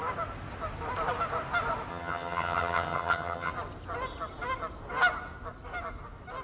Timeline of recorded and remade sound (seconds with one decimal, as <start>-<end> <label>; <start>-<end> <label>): 0.0-1.9 recorded; 1.9-3.5 remade; 3.5-6.4 recorded